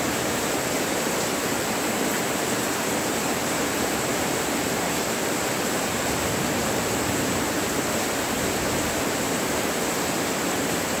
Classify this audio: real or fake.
fake